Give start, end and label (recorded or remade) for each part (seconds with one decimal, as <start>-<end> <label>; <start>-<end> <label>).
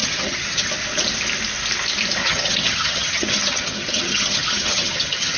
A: 0.0-0.7 remade; 0.7-2.2 recorded; 2.2-5.4 remade